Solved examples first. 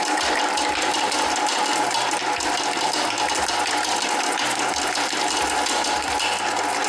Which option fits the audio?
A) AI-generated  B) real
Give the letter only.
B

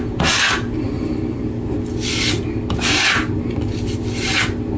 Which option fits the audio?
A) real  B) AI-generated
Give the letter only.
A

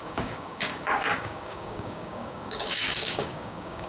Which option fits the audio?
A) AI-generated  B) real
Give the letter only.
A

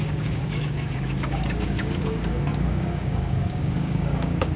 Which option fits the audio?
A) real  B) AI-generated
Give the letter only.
B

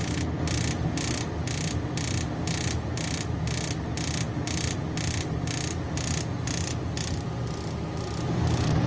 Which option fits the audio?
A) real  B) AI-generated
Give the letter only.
A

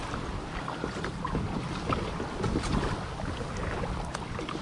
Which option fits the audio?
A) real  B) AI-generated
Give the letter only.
A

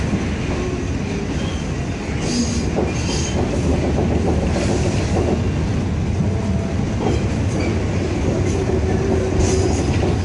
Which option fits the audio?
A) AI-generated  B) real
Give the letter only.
B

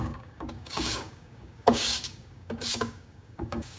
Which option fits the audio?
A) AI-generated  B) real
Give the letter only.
A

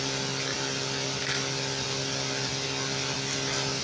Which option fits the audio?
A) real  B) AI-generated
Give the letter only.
A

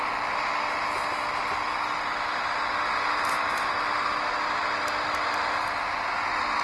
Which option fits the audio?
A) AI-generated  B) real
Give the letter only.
B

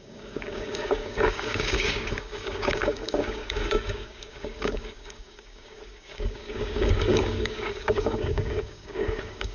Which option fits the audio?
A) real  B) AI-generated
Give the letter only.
B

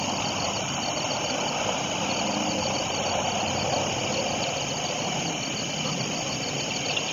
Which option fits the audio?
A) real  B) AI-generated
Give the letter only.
A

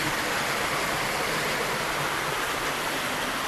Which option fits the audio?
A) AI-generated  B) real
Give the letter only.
B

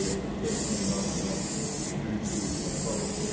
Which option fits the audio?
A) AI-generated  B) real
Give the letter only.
B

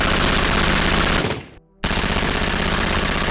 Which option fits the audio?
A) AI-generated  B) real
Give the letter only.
B